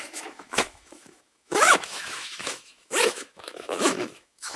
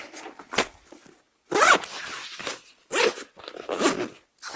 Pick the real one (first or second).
second